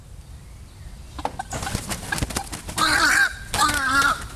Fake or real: real